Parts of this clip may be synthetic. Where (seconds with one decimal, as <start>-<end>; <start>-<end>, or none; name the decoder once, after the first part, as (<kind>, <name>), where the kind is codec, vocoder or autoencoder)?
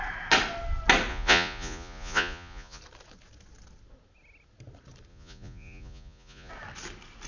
1.1-2.8 (vocoder, Vocos); 5.1-6.5